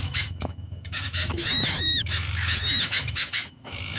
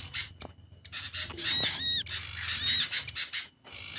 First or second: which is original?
second